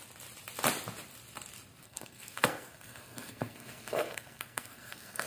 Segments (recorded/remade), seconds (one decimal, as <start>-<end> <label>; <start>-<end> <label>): 0.0-1.8 recorded; 1.8-5.3 remade